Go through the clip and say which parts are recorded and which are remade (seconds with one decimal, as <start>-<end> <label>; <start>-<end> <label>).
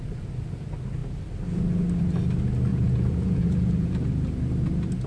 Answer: 0.0-2.7 recorded; 2.7-4.1 remade; 4.1-5.1 recorded